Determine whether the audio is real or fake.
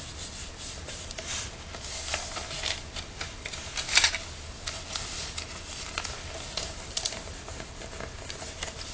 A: real